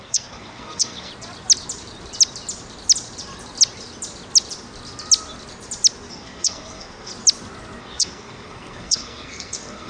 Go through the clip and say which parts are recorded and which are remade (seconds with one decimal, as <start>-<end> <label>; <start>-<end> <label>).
0.0-1.1 remade; 1.1-6.1 recorded; 6.1-7.1 remade; 7.1-7.8 recorded; 7.8-9.9 remade